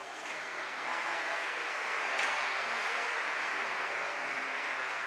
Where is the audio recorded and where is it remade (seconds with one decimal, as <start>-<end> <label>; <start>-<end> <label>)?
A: 0.0-5.1 remade